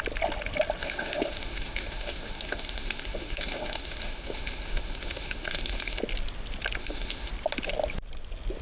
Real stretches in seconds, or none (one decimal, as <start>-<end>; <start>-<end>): 0.0-0.8; 6.0-6.8; 7.3-8.6